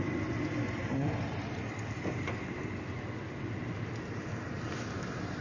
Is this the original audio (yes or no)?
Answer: yes